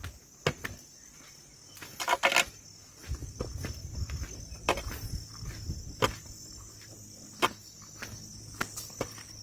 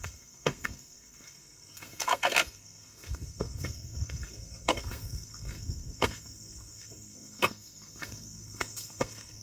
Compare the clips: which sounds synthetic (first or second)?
second